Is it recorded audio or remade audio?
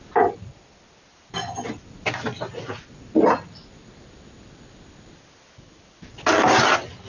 recorded